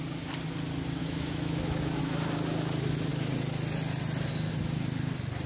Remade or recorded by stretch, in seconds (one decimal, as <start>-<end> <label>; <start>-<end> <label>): 0.0-1.0 recorded; 1.0-2.0 remade; 2.0-5.5 recorded